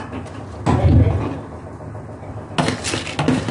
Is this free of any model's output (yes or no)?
yes